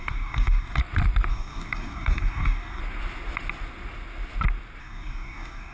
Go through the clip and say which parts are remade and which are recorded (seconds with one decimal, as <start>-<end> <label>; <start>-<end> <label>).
0.0-0.8 remade; 0.8-1.3 recorded; 1.3-2.8 remade; 2.8-4.8 recorded; 4.8-5.7 remade